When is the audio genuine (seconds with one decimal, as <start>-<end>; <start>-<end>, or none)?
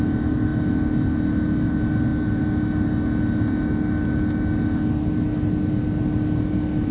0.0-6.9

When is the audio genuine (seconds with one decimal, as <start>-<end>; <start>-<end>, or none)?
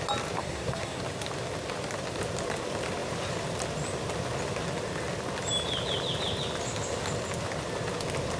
0.0-0.4; 1.0-8.4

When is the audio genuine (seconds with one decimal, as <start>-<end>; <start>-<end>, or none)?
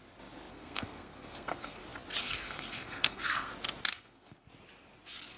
0.0-0.5; 1.8-2.2; 3.5-3.9; 4.5-5.4